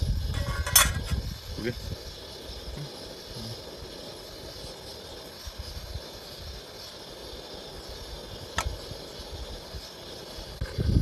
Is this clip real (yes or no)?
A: yes